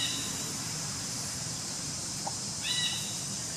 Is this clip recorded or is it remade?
remade